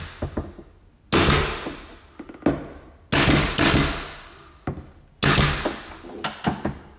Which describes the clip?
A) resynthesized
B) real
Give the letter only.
B